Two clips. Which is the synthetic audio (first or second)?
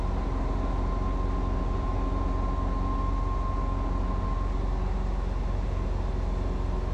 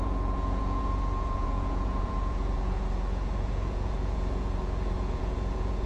second